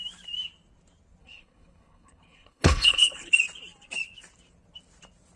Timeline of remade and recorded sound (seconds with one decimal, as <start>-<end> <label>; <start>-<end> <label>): 0.0-1.2 recorded; 1.2-3.3 remade; 3.3-5.4 recorded